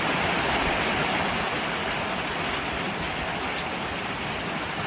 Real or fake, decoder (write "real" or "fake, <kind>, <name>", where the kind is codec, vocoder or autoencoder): real